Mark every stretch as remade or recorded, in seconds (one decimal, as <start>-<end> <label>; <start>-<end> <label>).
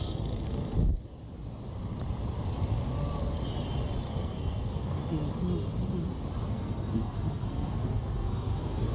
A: 0.0-0.8 remade; 0.8-4.1 recorded; 4.1-5.0 remade; 5.0-6.5 recorded; 6.5-8.9 remade